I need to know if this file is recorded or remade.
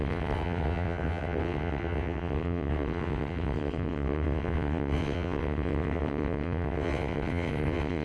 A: remade